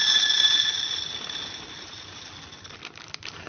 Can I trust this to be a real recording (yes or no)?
yes